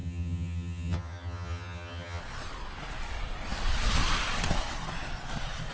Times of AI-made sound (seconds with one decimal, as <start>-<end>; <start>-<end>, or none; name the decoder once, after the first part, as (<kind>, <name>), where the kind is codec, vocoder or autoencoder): 0.0-2.2 (vocoder, HiFi-GAN)